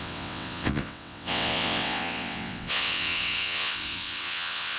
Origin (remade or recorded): remade